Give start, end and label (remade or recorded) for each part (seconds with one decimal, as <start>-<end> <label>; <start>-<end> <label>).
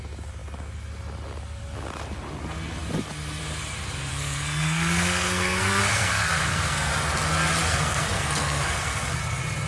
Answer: 0.0-4.1 recorded; 4.1-6.9 remade; 6.9-7.6 recorded; 7.6-9.2 remade; 9.2-9.7 recorded